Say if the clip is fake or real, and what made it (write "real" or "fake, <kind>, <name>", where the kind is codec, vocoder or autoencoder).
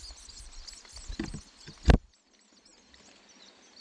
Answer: real